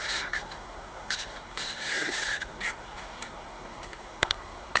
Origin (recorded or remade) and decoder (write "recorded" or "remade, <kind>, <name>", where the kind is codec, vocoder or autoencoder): remade, codec, SNAC